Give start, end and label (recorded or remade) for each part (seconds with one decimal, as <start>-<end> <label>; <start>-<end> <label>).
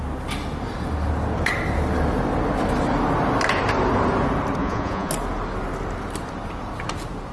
0.0-4.6 recorded; 4.6-5.1 remade; 5.1-7.3 recorded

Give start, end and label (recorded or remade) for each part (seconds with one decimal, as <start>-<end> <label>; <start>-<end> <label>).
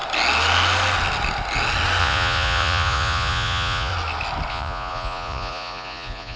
0.0-2.0 recorded; 2.0-3.9 remade; 3.9-4.5 recorded; 4.5-6.4 remade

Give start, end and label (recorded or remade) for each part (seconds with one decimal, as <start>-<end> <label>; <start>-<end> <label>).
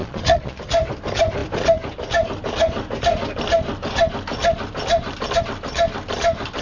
0.0-0.6 remade; 0.6-6.6 recorded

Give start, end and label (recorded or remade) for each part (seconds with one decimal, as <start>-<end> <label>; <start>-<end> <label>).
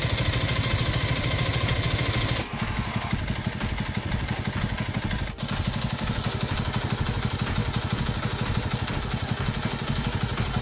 0.0-10.6 recorded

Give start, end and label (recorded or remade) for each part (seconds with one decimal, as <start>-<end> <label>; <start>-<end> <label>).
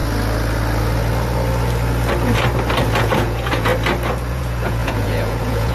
0.0-3.0 recorded; 3.0-3.7 remade; 3.7-4.3 recorded; 4.3-5.7 remade